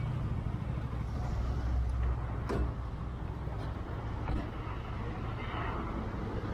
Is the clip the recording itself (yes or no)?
yes